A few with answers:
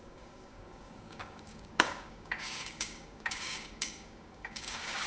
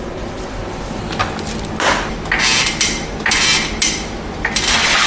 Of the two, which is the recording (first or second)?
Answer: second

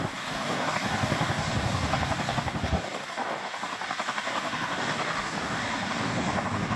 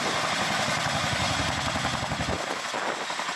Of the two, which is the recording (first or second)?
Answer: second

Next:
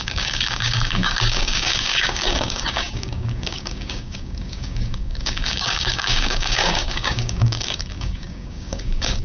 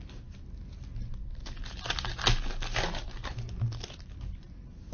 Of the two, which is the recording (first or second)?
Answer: second